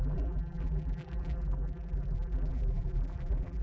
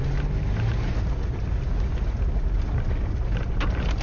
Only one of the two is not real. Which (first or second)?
first